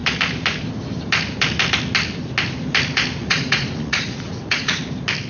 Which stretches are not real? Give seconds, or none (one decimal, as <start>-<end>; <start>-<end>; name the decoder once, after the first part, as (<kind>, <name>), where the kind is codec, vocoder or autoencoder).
3.2-4.8 (vocoder, Vocos)